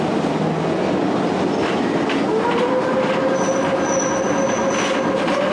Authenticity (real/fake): real